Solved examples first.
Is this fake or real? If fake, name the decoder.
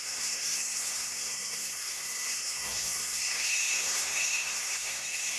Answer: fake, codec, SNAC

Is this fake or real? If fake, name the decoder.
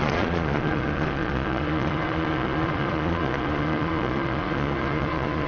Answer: fake, vocoder, Vocos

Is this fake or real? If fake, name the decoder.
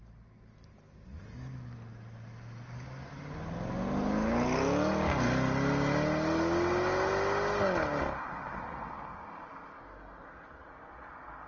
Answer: real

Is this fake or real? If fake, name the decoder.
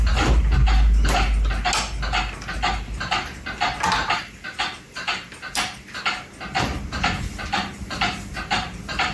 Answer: real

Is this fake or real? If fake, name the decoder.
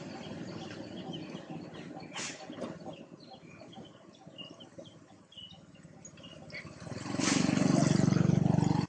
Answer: real